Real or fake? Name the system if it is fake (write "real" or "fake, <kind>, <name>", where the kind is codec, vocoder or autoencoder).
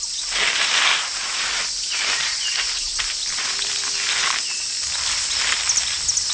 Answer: real